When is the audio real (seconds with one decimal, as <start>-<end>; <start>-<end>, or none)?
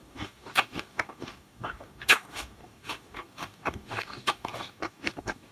none